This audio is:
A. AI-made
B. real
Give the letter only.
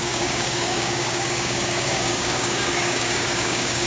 A